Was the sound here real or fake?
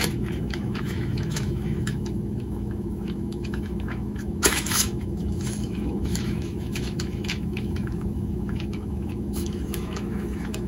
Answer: fake